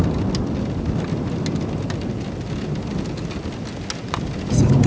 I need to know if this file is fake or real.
real